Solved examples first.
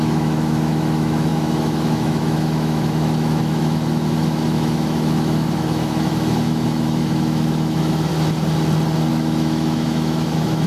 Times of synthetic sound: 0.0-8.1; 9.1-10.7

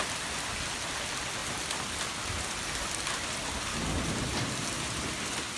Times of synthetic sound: none

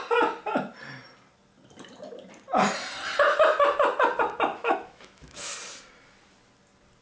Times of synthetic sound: 4.5-5.5

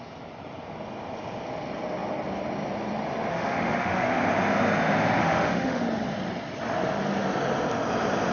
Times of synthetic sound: 3.3-4.2; 5.2-5.8

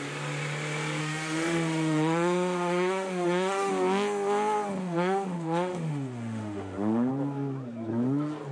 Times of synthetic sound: 1.0-3.7; 4.8-7.1

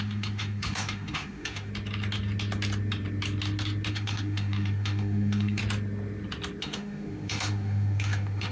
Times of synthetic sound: 0.0-1.7; 3.9-5.6; 6.6-8.5

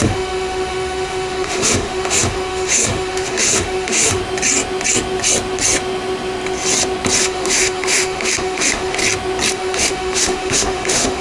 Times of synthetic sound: 0.0-4.2; 7.2-9.0; 9.5-11.2